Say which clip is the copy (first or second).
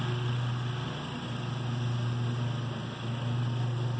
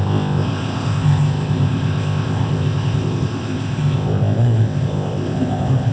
second